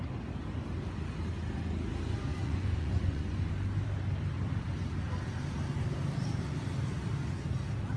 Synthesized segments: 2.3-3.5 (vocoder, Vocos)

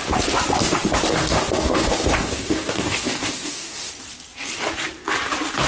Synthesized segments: 1.2-3.9 (codec, DAC)

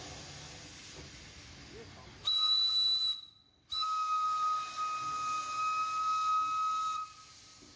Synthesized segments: none

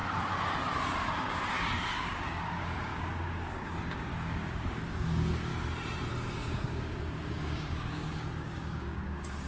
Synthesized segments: 1.1-5.5 (codec, DAC); 6.4-9.5

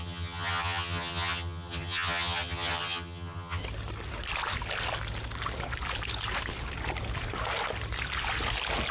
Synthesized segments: 0.0-3.6 (vocoder, HiFi-GAN)

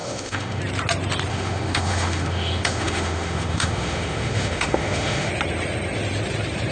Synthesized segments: 0.0-0.6 (autoencoder, DAC-VAE); 1.3-5.3